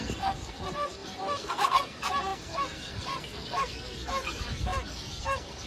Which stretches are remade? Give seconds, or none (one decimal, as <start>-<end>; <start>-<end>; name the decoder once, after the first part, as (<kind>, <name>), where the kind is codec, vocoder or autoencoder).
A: 0.0-5.7 (codec, SNAC)